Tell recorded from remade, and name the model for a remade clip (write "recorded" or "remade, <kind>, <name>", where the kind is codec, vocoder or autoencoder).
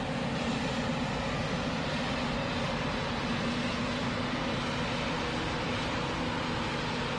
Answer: recorded